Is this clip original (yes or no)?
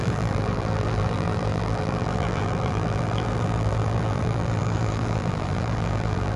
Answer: no